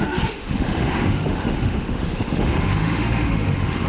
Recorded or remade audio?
remade